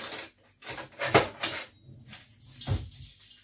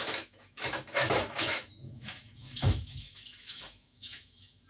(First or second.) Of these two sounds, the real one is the first